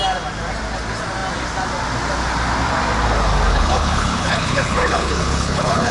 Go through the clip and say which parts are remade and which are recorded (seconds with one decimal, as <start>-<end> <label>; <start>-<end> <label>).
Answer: 0.0-3.5 recorded; 3.5-5.9 remade